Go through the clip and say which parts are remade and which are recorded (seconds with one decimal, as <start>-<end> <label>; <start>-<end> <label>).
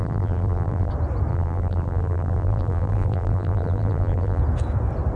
0.0-0.9 remade; 0.9-1.3 recorded; 1.3-4.4 remade; 4.4-5.2 recorded